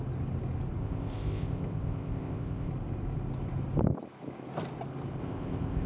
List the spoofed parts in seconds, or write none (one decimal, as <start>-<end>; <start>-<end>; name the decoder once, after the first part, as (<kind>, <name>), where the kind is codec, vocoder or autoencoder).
0.8-2.7 (codec, ZipCodec); 5.2-5.9